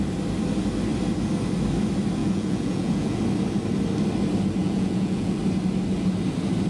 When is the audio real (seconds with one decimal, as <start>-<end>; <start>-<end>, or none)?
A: 0.0-2.2; 3.2-4.6; 5.4-6.7